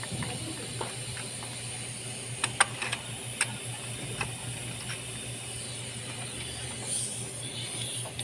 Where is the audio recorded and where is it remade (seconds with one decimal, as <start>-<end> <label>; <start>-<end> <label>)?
0.0-8.2 recorded